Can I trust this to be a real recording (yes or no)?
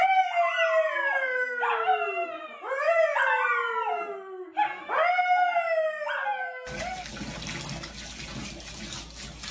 yes